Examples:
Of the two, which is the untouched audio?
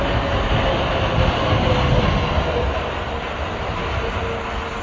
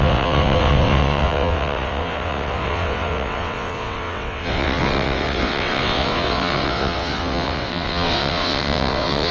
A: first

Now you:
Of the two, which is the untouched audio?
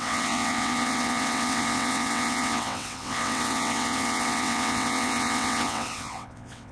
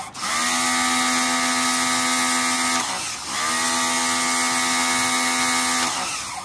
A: second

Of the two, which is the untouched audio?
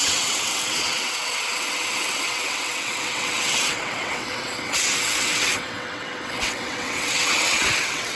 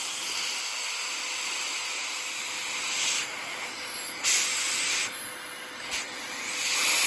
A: second